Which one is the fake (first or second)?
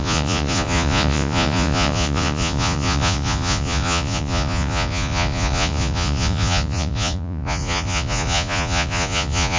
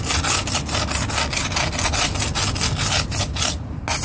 first